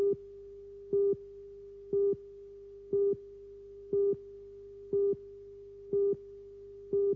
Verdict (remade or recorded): recorded